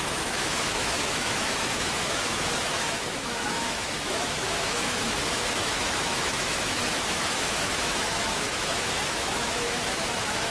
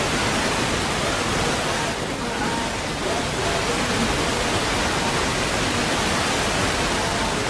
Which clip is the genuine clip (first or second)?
second